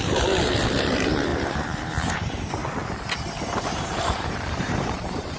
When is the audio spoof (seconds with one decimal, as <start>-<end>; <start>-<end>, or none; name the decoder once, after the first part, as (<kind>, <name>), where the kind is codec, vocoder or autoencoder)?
0.0-2.6 (vocoder, BigVGAN v2); 3.5-5.4